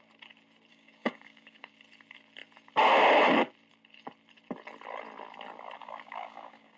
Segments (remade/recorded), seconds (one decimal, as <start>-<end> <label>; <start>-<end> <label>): 0.0-0.7 recorded; 0.7-1.7 remade; 1.7-5.8 recorded; 5.8-6.8 remade